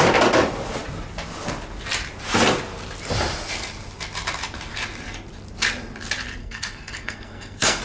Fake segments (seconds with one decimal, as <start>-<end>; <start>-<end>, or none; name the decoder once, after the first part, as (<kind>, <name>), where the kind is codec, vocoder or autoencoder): 6.4-7.8 (codec, SNAC)